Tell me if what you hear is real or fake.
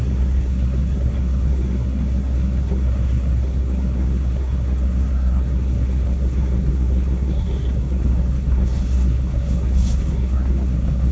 fake